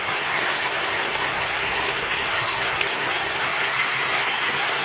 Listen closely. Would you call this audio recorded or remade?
remade